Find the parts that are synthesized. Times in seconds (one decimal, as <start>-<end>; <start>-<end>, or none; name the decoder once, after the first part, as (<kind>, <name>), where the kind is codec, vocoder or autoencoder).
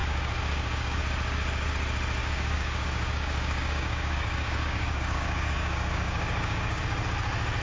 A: 0.0-1.0 (codec, DAC); 2.2-6.8